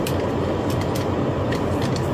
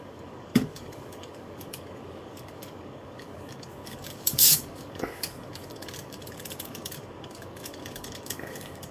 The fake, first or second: second